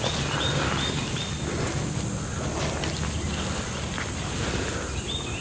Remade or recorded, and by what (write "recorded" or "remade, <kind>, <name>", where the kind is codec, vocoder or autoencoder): recorded